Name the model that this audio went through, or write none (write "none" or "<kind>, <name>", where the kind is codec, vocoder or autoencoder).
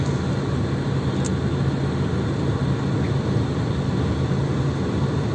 none